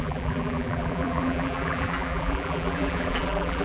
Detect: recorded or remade remade